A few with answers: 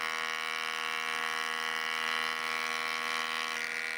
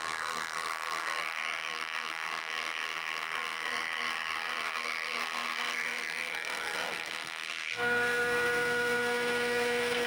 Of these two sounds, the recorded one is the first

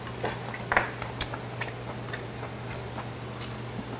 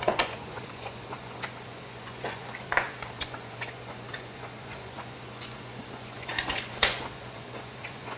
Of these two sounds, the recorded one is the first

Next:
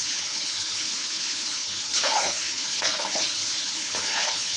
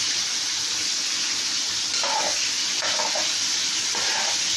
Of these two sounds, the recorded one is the second